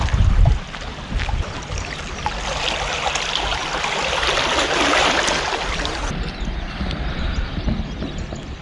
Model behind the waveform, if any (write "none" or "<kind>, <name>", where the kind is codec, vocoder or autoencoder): none